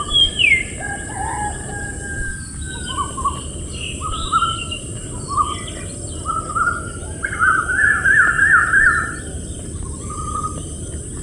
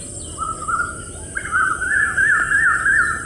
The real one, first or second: second